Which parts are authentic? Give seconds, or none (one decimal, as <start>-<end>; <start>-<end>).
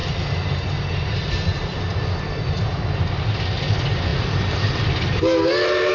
0.0-5.9